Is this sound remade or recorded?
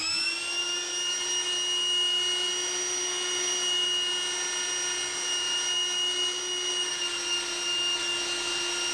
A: recorded